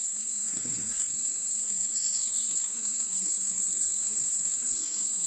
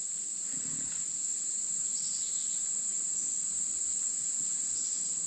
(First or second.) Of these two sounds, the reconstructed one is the first